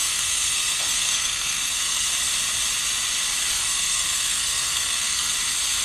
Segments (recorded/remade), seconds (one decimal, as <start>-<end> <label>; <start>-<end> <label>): 0.0-2.1 remade; 2.1-3.5 recorded; 3.5-5.3 remade; 5.3-5.8 recorded